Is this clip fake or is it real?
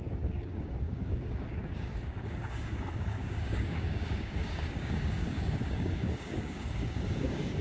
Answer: fake